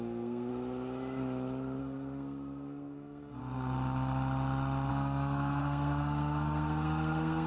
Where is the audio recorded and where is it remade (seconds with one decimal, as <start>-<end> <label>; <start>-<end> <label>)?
0.0-0.5 remade; 0.5-1.8 recorded; 1.8-3.4 remade; 3.4-4.9 recorded; 4.9-7.5 remade